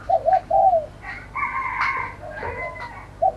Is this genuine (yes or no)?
yes